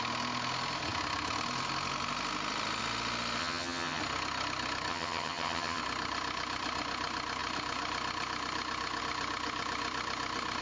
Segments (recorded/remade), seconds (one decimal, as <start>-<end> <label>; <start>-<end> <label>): 0.0-3.4 recorded; 3.4-4.0 remade; 4.0-4.9 recorded; 4.9-5.8 remade; 5.8-10.6 recorded

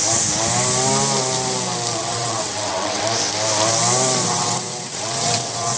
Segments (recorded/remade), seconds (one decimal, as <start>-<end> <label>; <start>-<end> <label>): 0.0-2.0 recorded; 2.0-3.0 remade; 3.0-4.2 recorded; 4.2-5.8 remade

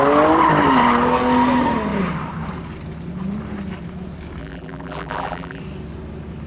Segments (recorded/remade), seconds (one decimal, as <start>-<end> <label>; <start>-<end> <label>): 0.0-4.4 recorded; 4.4-5.6 remade; 5.6-6.5 recorded

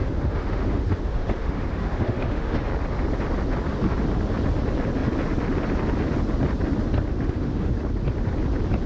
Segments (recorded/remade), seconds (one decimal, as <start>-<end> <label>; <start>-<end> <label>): 0.0-2.7 remade; 2.7-7.1 recorded; 7.1-7.7 remade; 7.7-8.9 recorded

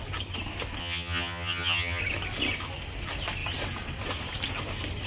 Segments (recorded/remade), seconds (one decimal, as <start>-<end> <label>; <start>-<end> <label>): 0.0-0.8 recorded; 0.8-2.0 remade; 2.0-5.1 recorded

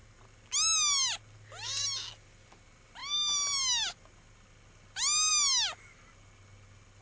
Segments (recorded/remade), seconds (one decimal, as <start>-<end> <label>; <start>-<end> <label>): 0.0-7.0 recorded

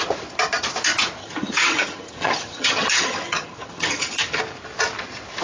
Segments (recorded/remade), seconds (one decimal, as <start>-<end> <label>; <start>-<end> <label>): 0.0-1.2 recorded; 1.2-4.4 remade; 4.4-5.4 recorded

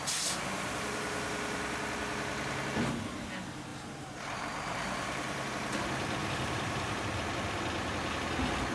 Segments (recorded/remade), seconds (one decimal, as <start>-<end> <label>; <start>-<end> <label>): 0.0-3.7 recorded; 3.7-5.5 remade; 5.5-6.2 recorded; 6.2-7.0 remade; 7.0-8.7 recorded